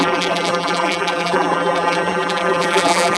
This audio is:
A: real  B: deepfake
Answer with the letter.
B